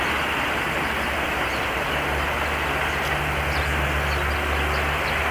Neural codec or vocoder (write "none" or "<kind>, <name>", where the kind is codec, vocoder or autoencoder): none